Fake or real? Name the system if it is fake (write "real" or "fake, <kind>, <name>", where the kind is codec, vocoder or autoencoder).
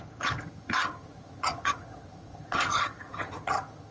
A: fake, vocoder, HiFi-GAN